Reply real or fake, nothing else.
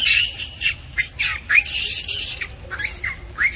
real